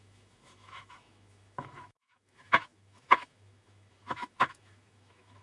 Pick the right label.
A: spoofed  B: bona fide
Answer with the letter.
A